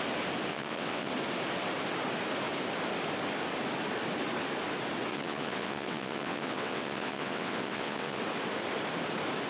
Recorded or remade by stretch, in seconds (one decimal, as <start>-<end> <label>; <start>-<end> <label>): 0.0-0.5 recorded; 0.5-1.1 remade; 1.1-5.1 recorded; 5.1-8.2 remade; 8.2-9.5 recorded